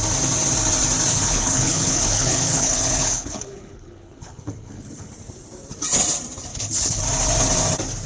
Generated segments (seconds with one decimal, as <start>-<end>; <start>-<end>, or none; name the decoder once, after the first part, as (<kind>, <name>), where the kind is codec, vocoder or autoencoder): 1.1-5.1 (codec, HILCodec); 6.5-7.0